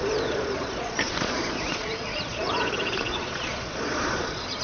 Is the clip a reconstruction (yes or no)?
yes